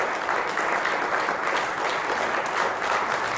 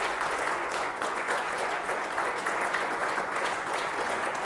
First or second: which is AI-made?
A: second